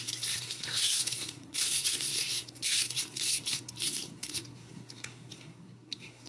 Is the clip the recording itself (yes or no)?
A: no